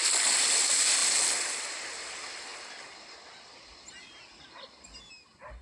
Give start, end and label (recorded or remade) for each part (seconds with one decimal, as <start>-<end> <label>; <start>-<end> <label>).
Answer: 0.0-5.6 recorded

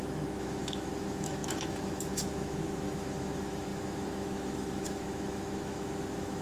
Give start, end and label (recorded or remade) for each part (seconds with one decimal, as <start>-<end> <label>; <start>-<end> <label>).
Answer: 0.0-6.4 remade

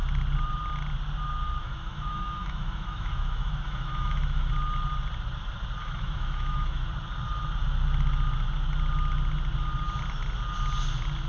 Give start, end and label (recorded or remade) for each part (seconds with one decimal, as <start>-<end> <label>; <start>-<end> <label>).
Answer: 0.0-1.6 recorded; 1.6-4.5 remade; 4.5-5.8 recorded; 5.8-6.9 remade; 6.9-11.3 recorded

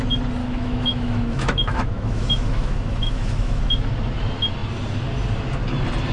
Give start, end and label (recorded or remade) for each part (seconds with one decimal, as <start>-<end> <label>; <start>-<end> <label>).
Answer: 0.0-0.4 recorded; 0.4-3.6 remade; 3.6-6.1 recorded

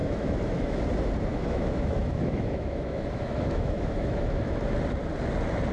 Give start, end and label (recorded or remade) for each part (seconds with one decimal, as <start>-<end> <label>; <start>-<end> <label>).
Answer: 0.0-0.8 remade; 0.8-1.3 recorded; 1.3-4.7 remade; 4.7-5.7 recorded